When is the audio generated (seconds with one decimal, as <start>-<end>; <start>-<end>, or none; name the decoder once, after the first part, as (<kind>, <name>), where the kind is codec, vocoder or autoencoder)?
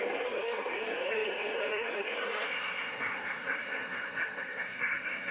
0.0-5.3 (codec, SNAC)